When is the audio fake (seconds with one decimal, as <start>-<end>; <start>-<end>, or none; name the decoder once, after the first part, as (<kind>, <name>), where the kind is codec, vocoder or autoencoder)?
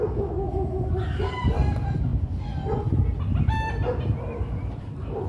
none